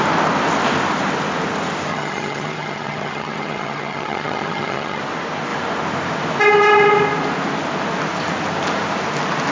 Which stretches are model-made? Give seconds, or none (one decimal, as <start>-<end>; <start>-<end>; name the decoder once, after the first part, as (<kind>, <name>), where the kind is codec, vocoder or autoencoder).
1.9-5.0 (vocoder, HiFi-GAN)